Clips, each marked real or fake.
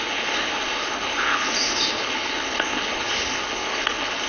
fake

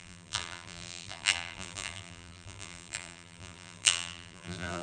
fake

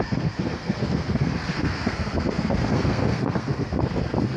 fake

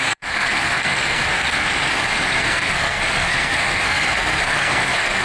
fake